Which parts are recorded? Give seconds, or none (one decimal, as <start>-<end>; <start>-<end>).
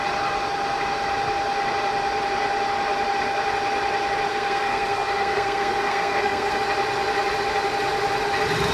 0.0-4.3; 6.6-8.7